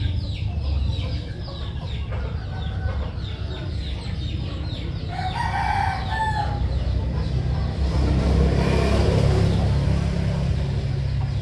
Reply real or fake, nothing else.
real